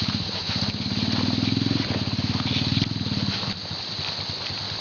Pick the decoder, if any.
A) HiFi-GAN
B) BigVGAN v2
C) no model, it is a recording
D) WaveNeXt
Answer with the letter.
C